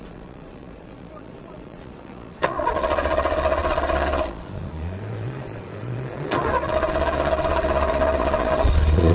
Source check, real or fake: fake